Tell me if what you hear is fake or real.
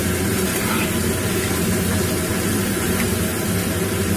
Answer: real